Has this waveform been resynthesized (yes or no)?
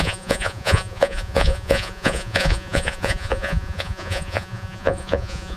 yes